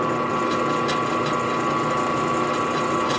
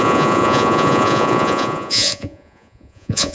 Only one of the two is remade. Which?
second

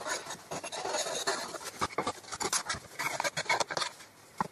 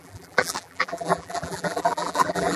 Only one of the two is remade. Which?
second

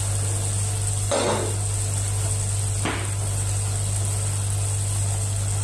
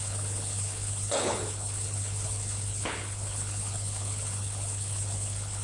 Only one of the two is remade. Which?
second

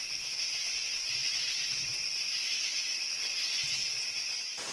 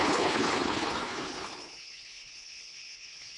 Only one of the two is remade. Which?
second